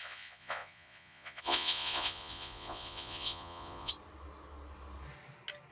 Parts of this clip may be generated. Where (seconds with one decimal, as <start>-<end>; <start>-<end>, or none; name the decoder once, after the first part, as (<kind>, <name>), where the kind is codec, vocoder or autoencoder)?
0.0-3.9 (vocoder, Vocos)